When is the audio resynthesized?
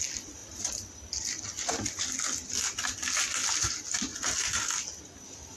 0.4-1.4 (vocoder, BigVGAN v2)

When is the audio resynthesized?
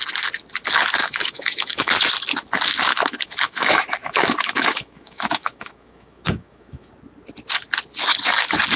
1.0-1.9 (autoencoder, DAC-VAE); 2.9-6.9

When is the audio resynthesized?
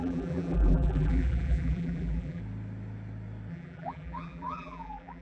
0.0-2.4 (vocoder, BigVGAN v2); 3.5-5.2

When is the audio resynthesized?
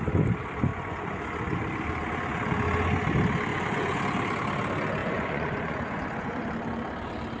0.7-1.2 (vocoder, Vocos); 3.5-4.0; 5.0-6.5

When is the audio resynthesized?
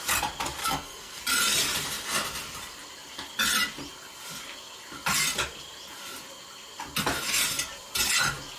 0.6-1.2 (codec, SNAC)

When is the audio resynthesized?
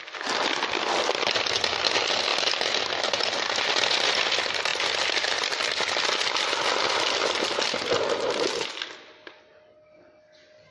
none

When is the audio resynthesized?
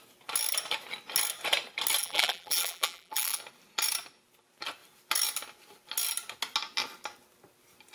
2.0-3.4 (vocoder, BigVGAN v2)